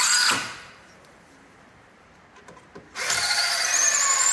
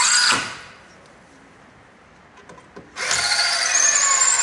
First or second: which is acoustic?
second